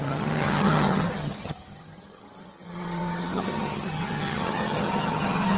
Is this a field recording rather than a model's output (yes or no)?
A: no